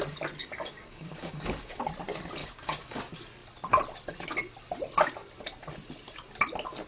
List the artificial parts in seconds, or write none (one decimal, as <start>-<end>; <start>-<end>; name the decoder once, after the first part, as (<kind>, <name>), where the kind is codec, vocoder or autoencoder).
0.4-1.8 (codec, DAC); 2.4-3.0